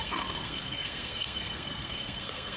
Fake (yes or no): yes